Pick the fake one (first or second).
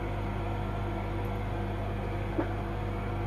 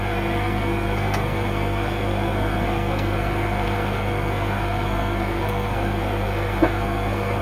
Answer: second